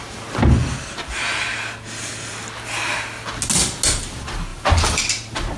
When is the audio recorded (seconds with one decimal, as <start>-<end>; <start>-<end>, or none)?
0.0-5.6